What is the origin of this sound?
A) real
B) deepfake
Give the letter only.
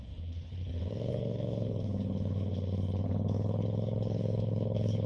B